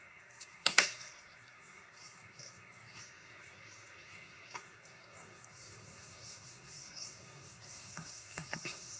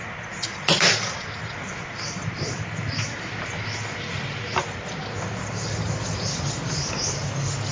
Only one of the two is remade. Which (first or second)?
first